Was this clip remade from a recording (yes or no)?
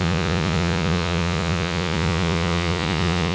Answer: yes